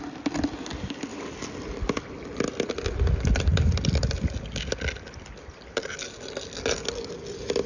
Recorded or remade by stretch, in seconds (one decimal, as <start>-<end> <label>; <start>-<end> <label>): 0.0-7.7 recorded